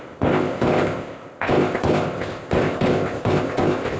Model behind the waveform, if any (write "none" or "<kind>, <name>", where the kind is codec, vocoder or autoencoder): codec, ZipCodec